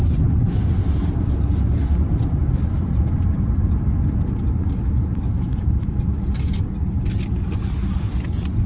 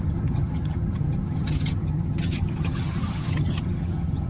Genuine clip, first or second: first